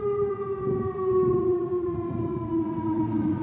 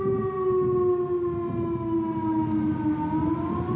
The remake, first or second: first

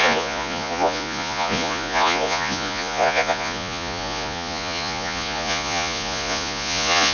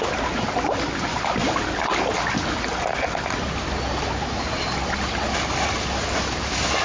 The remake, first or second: first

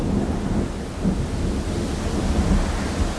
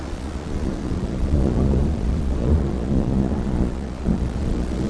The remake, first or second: second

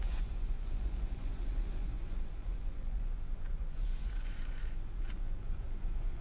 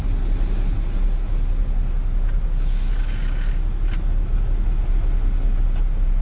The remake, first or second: first